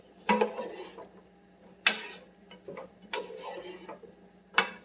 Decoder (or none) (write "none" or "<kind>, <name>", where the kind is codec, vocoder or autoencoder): none